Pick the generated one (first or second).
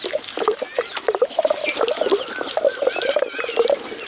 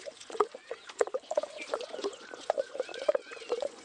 second